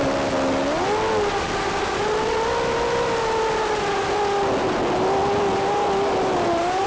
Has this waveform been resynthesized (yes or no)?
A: no